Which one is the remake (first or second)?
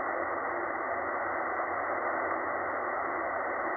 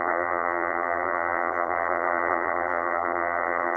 second